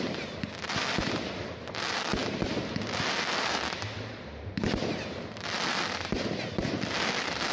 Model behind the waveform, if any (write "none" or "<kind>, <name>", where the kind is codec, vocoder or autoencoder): none